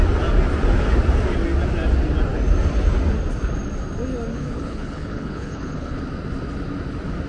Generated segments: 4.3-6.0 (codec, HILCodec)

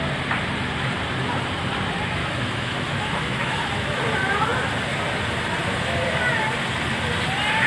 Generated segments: 2.2-4.0 (autoencoder, DAC-VAE)

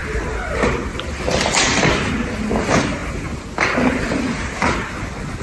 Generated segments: 0.0-1.9 (vocoder, BigVGAN v2)

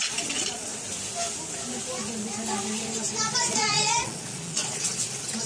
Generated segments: 0.0-0.7 (vocoder, Vocos); 3.5-5.5